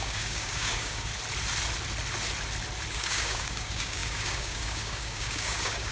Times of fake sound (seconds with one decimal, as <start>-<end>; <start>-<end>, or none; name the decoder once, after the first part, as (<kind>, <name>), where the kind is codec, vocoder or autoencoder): 0.0-1.1 (codec, DAC); 2.9-5.9